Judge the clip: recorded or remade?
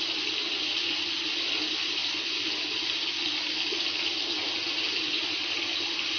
recorded